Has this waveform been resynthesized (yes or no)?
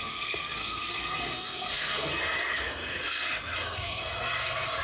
yes